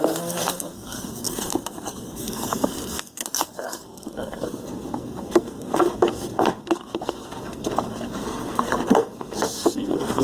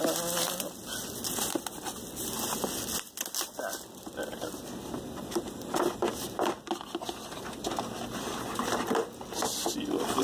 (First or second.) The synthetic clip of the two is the first